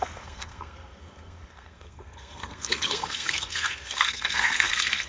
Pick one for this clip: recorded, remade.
remade